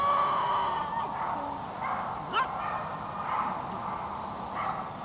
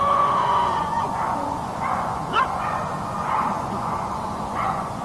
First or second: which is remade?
second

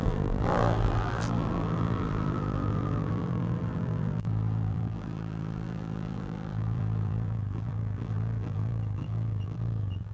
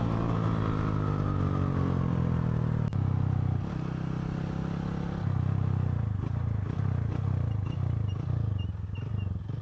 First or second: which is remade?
first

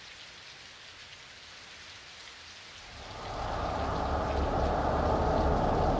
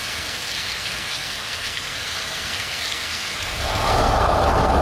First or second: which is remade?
second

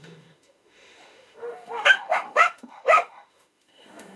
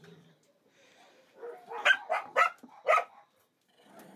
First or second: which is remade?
first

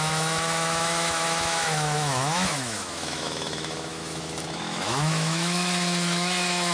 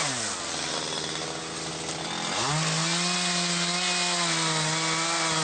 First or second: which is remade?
first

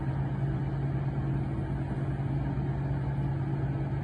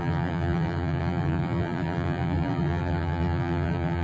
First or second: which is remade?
second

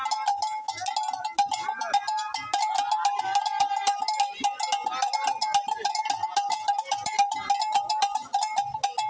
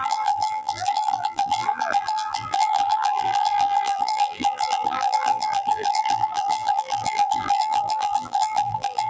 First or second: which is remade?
second